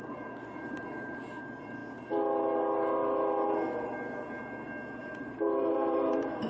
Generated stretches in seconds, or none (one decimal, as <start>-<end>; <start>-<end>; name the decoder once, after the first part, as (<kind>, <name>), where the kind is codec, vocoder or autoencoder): 0.0-1.8 (vocoder, BigVGAN v2); 5.0-6.5